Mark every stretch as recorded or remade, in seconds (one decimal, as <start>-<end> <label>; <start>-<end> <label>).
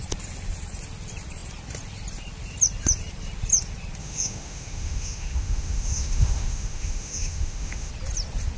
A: 0.0-4.0 recorded; 4.0-7.9 remade; 7.9-8.6 recorded